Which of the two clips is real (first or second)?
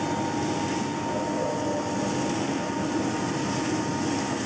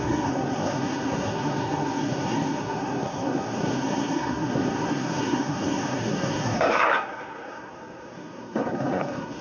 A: first